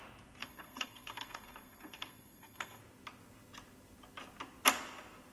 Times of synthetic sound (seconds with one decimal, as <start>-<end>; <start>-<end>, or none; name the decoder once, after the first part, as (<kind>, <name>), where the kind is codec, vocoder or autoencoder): 0.4-2.8 (codec, SNAC)